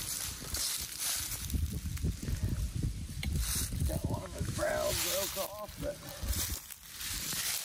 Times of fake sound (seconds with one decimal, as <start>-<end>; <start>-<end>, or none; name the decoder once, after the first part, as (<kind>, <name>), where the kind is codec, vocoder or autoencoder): 4.0-4.7 (autoencoder, DAC-VAE)

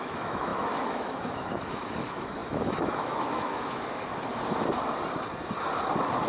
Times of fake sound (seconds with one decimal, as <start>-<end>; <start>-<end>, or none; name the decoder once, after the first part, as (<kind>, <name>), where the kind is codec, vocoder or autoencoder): 0.0-4.1 (autoencoder, DAC-VAE)

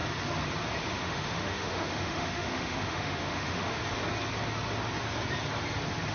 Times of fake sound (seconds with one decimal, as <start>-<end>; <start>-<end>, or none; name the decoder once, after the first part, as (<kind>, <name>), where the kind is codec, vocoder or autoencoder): 0.8-3.8 (autoencoder, DAC-VAE)